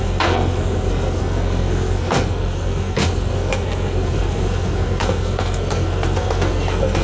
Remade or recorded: remade